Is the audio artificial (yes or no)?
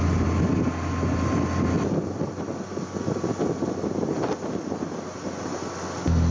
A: no